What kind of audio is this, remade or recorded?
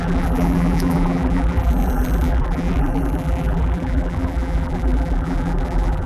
remade